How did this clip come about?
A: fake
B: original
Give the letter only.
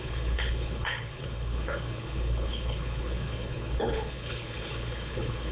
A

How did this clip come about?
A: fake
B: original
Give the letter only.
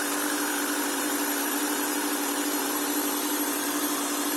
A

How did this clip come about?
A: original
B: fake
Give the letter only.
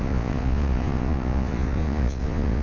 B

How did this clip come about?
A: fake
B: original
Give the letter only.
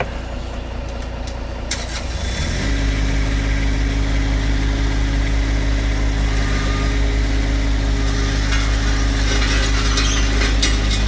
B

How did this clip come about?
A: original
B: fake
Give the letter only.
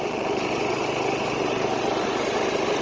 B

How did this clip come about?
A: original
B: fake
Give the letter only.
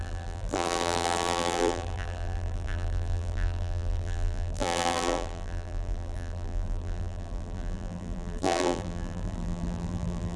B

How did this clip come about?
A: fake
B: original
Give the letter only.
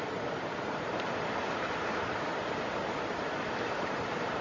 A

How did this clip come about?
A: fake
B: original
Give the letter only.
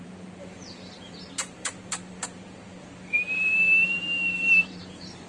A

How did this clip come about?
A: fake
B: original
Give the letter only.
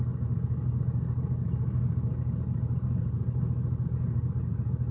B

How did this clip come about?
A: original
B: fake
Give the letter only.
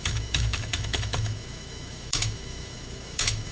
B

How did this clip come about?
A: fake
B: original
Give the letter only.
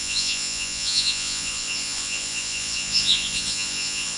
A